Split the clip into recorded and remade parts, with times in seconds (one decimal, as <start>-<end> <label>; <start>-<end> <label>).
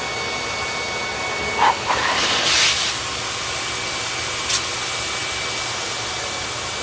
0.0-6.8 recorded